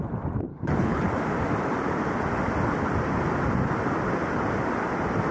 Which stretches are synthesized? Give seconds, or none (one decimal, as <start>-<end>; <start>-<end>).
0.5-1.1